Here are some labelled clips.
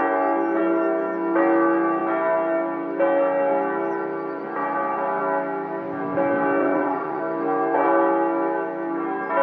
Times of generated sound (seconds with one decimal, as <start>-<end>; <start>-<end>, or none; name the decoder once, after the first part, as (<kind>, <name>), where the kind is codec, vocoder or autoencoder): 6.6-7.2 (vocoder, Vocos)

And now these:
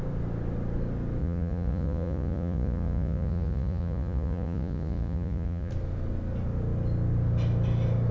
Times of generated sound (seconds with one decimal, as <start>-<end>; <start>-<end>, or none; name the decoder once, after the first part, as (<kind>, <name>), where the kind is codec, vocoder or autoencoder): 1.2-5.7 (vocoder, Vocos)

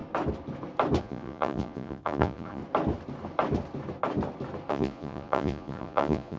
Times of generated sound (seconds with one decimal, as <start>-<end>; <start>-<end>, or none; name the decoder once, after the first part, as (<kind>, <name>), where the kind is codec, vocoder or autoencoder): 1.0-2.6 (vocoder, Vocos); 4.7-6.4

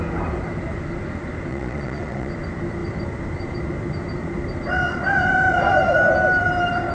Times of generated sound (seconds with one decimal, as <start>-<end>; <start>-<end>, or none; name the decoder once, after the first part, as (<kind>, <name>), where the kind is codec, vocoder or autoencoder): 1.5-2.3 (vocoder, Vocos)

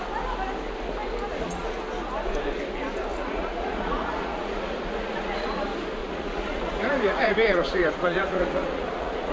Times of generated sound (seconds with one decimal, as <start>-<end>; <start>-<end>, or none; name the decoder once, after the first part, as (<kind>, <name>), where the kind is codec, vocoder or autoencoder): 1.3-1.8 (vocoder, Vocos); 3.1-5.6; 6.0-9.3